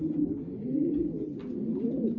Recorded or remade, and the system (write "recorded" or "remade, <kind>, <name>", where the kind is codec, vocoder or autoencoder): recorded